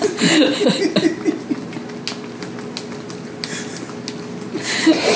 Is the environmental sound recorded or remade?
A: recorded